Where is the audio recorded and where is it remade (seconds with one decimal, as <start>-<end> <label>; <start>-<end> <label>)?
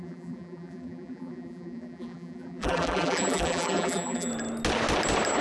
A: 0.0-4.3 remade; 4.3-5.4 recorded